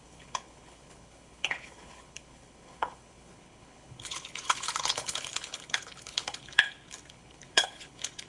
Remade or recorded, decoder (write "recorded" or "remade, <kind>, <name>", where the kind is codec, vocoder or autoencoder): remade, codec, HILCodec